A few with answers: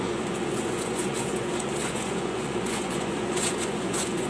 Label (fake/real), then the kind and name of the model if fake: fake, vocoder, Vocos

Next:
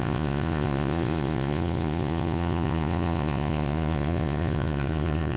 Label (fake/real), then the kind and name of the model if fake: fake, vocoder, Vocos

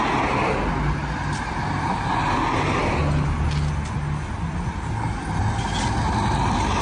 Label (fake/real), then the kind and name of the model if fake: real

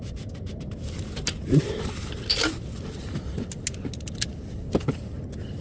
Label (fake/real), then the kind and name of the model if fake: real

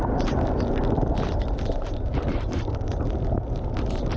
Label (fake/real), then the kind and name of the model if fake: real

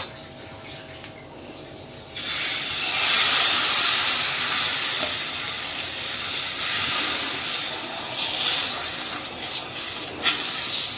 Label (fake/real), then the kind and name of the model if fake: real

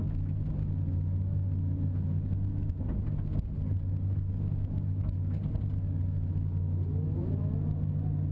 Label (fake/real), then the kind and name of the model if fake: real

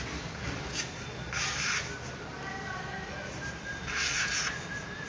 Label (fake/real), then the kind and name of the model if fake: real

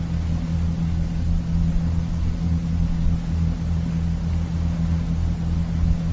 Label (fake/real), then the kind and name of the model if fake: real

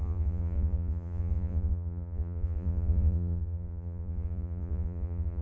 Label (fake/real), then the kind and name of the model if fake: fake, vocoder, Vocos